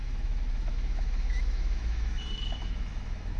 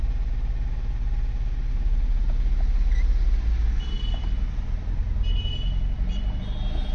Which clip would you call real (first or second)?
second